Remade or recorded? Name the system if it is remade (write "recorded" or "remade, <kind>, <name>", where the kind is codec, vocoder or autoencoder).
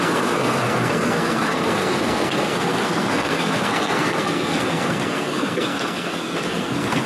remade, codec, SNAC